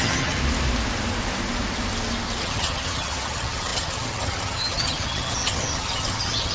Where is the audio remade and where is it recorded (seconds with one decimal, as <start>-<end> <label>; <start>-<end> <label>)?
0.0-0.4 remade; 0.4-2.4 recorded; 2.4-6.5 remade